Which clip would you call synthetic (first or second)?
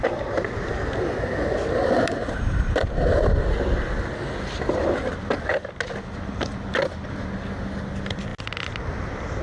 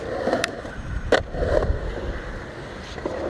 second